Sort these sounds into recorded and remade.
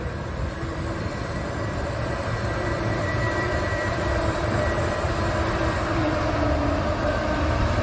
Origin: remade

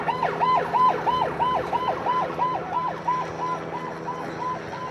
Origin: recorded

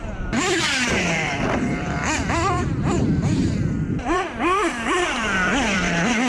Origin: remade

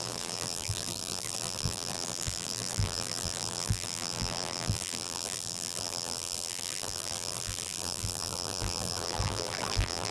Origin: remade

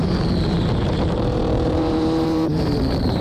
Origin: remade